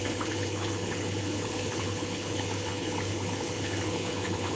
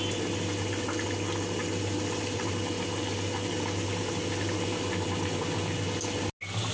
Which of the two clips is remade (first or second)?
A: first